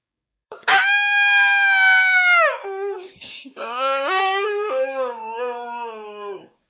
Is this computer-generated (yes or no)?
yes